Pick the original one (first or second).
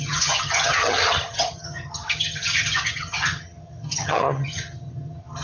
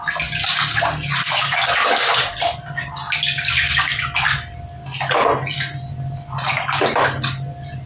second